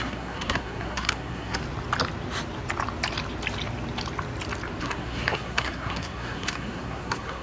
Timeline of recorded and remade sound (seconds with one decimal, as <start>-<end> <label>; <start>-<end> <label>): 0.0-1.6 remade; 1.6-4.8 recorded; 4.8-7.4 remade